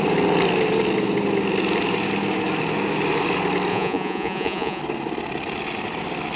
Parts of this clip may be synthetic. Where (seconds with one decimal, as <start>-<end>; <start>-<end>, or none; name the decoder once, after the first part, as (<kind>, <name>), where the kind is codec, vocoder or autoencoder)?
3.7-4.8 (vocoder, Vocos)